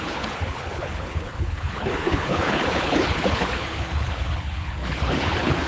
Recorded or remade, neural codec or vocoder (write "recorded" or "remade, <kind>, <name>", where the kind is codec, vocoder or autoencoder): remade, codec, HILCodec